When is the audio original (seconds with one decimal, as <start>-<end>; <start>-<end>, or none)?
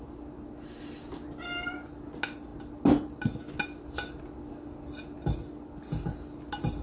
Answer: 0.0-6.8